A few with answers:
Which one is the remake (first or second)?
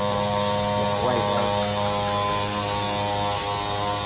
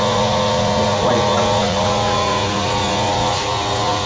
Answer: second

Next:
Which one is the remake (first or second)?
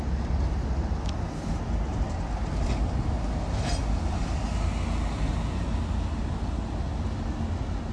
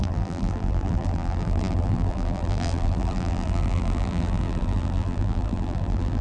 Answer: second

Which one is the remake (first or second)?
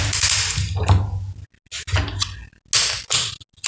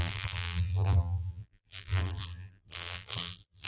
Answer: second